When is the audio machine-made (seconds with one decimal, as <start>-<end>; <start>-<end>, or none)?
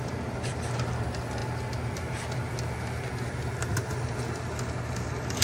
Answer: none